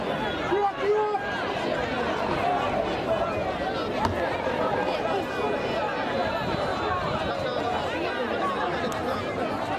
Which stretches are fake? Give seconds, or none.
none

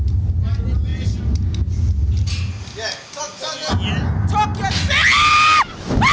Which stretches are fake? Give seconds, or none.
none